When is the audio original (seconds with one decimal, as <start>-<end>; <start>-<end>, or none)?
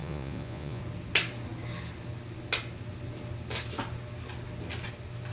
0.8-5.3